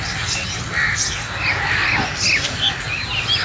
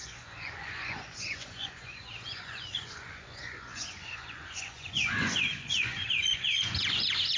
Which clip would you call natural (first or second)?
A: first